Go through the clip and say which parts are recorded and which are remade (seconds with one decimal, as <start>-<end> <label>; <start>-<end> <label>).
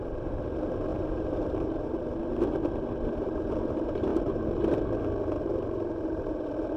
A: 0.0-2.2 remade; 2.2-3.1 recorded; 3.1-4.1 remade; 4.1-5.4 recorded; 5.4-6.8 remade